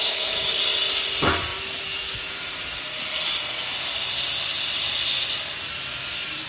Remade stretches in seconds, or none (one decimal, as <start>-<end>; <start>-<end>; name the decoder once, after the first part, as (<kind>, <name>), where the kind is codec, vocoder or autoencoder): 0.0-0.6 (codec, DAC)